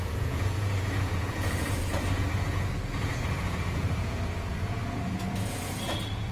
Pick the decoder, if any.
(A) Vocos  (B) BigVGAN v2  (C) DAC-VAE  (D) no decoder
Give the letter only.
A